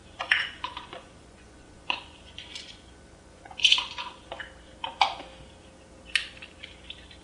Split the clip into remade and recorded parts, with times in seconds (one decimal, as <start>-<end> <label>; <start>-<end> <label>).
0.0-4.3 remade; 4.3-7.2 recorded